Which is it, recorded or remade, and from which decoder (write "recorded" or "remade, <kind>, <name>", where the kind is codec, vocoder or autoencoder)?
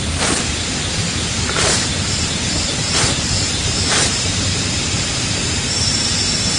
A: remade, vocoder, BigVGAN v2